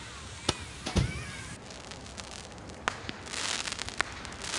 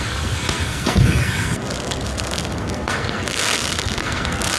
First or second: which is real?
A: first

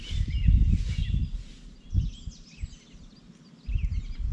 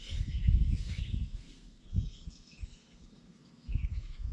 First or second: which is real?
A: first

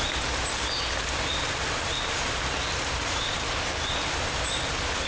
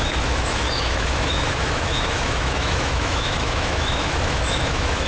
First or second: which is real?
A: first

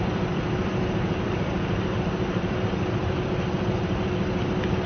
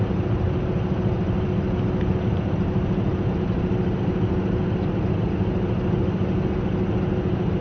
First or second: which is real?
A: second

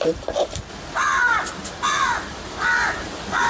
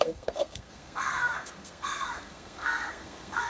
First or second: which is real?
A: first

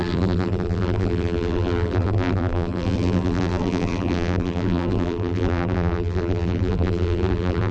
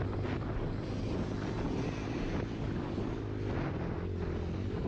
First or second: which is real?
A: second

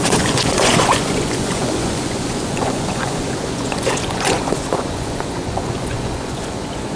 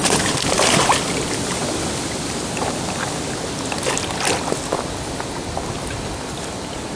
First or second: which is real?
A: second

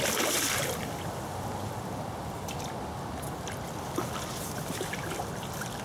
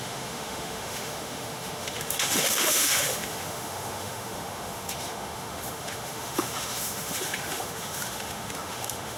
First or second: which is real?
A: first